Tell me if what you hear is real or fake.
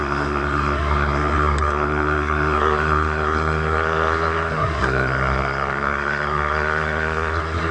fake